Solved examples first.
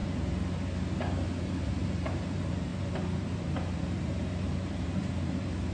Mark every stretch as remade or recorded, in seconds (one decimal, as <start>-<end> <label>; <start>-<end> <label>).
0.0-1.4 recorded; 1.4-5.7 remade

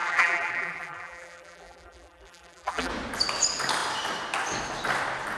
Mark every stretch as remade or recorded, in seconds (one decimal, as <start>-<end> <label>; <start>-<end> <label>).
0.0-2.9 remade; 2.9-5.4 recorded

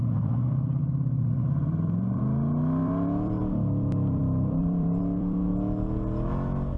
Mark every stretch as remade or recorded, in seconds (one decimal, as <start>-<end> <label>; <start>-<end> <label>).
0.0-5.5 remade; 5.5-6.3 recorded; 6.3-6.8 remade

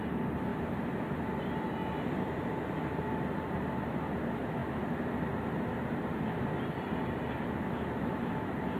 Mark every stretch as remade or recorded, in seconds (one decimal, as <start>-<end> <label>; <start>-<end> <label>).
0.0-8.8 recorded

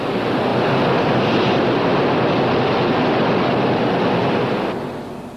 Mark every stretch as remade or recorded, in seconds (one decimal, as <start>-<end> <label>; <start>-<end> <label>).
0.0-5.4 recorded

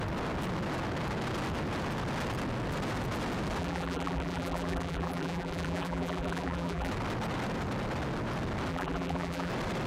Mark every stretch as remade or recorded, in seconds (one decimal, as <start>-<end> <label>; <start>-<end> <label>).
0.0-3.6 recorded; 3.6-6.9 remade; 6.9-8.7 recorded; 8.7-9.5 remade; 9.5-9.9 recorded

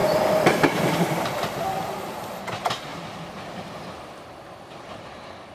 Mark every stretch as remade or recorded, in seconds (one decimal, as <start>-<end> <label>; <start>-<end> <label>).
0.0-2.4 remade; 2.4-2.9 recorded; 2.9-5.5 remade

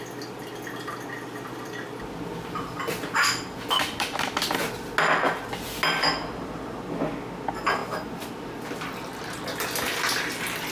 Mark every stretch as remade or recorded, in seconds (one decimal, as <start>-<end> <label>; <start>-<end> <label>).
0.0-10.7 recorded